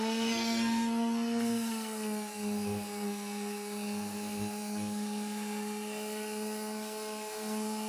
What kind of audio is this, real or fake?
fake